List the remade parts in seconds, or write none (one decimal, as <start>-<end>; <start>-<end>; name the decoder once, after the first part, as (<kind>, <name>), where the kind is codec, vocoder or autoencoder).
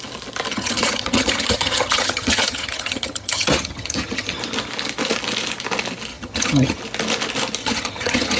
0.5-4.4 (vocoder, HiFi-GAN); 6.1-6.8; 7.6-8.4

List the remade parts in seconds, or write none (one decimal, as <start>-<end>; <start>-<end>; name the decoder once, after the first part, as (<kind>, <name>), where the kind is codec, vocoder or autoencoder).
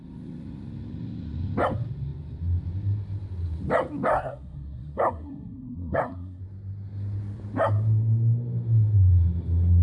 4.1-6.4 (codec, SNAC)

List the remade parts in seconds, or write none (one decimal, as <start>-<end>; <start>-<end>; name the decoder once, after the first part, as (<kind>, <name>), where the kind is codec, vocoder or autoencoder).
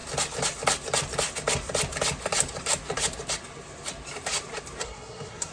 4.8-5.5 (codec, SNAC)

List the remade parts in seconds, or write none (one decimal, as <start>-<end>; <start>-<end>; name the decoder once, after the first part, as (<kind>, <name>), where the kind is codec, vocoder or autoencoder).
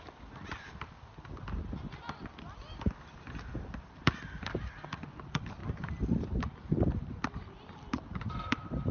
none